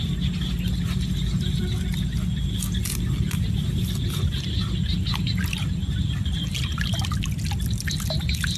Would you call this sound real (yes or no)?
yes